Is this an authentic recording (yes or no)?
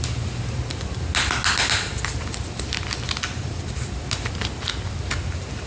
yes